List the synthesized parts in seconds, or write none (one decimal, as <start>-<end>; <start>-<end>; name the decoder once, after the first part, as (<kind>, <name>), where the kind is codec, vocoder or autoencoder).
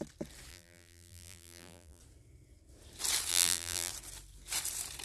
0.5-2.0 (vocoder, BigVGAN v2); 3.3-3.9